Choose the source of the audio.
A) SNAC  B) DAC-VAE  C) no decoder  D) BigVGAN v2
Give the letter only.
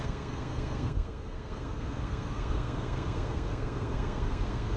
A